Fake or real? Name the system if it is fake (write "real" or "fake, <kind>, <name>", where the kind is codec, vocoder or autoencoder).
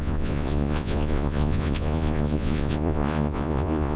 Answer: fake, vocoder, Vocos